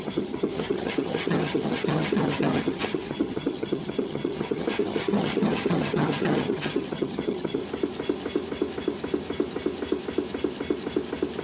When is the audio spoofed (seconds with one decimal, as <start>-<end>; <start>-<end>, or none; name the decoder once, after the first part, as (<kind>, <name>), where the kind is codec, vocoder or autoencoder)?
0.0-7.6 (vocoder, HiFi-GAN)